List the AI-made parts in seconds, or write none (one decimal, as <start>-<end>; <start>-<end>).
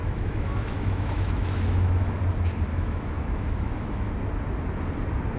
0.0-2.2; 2.7-4.1